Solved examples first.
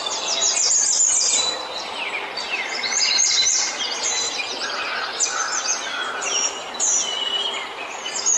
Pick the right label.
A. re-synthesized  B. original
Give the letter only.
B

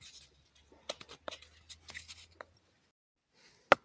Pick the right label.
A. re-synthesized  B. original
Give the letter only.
B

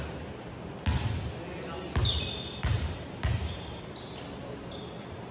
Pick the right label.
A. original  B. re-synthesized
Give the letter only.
A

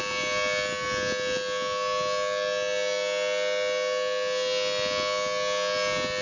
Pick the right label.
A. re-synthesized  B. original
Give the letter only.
B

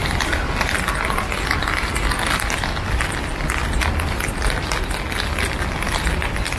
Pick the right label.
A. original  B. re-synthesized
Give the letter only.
A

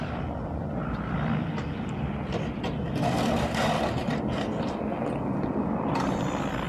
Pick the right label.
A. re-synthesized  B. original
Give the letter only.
B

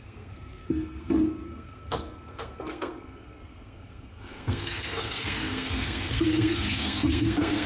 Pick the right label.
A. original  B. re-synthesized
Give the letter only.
B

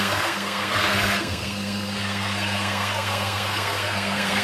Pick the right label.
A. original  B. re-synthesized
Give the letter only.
B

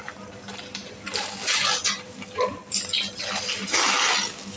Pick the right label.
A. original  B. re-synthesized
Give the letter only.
A